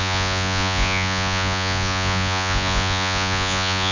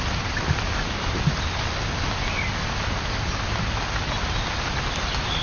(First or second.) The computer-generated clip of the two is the first